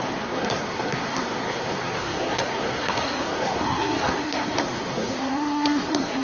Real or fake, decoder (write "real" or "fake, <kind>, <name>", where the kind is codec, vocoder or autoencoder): fake, codec, SNAC